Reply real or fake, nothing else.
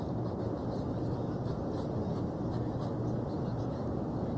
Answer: real